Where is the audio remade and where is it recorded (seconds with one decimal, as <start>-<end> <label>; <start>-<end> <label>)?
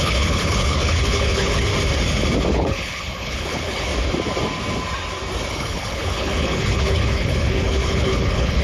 0.0-1.7 remade; 1.7-2.5 recorded; 2.5-3.9 remade; 3.9-5.5 recorded; 5.5-8.6 remade